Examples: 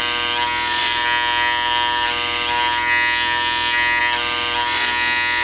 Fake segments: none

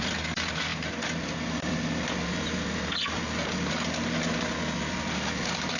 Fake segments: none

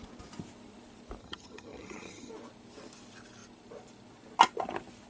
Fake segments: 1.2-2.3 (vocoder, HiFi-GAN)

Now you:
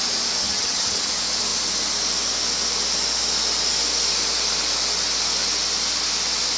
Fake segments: 0.4-1.1 (vocoder, HiFi-GAN)

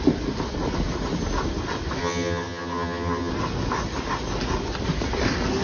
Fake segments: 2.0-3.3 (vocoder, HiFi-GAN)

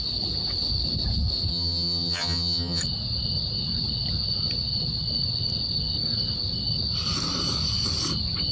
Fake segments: 1.5-2.8 (vocoder, HiFi-GAN)